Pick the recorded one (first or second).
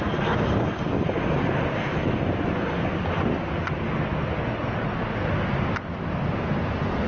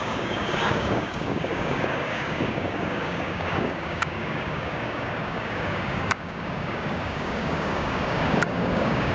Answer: first